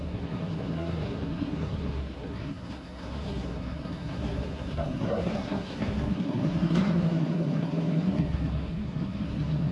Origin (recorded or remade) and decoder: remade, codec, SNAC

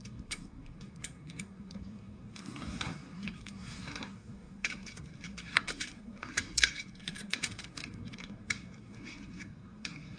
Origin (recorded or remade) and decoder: remade, codec, SNAC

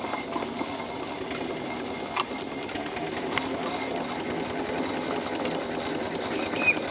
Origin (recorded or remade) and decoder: recorded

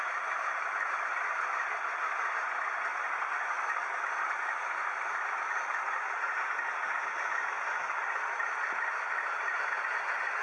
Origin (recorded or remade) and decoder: recorded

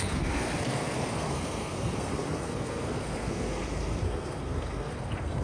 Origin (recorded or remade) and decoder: remade, codec, SNAC